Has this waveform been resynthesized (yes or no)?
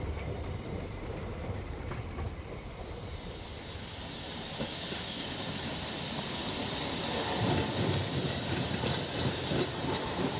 no